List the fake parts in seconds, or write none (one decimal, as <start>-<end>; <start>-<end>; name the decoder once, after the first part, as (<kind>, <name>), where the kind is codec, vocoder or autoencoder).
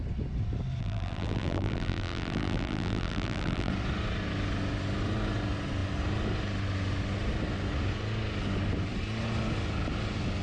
0.8-3.7 (vocoder, BigVGAN v2)